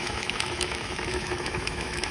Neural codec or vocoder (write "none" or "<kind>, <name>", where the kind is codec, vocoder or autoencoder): autoencoder, DAC-VAE